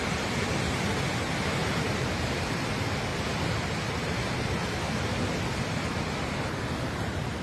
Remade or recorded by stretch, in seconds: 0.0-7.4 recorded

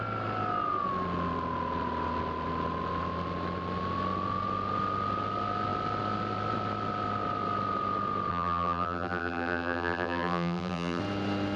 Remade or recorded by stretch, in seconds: 0.0-8.3 recorded; 8.3-11.0 remade; 11.0-11.6 recorded

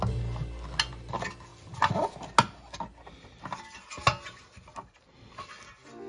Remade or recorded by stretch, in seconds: 0.0-6.1 recorded

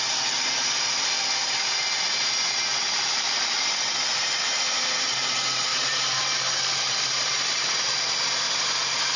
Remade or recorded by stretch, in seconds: 0.0-3.1 recorded; 3.1-3.7 remade; 3.7-5.7 recorded; 5.7-7.7 remade; 7.7-9.2 recorded

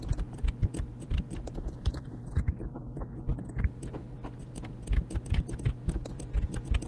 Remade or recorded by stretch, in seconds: 0.0-0.9 recorded; 0.9-2.1 remade; 2.1-6.9 recorded

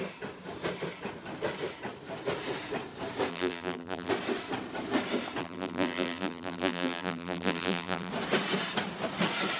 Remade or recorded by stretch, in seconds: 0.0-3.3 recorded; 3.3-4.1 remade; 4.1-5.4 recorded; 5.4-8.1 remade; 8.1-9.6 recorded

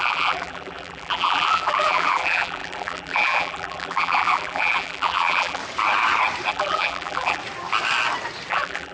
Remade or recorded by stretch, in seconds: 0.0-5.6 remade; 5.6-6.5 recorded; 6.5-7.4 remade; 7.4-8.5 recorded; 8.5-8.9 remade